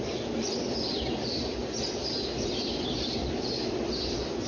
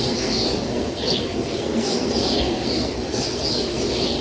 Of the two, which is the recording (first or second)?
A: first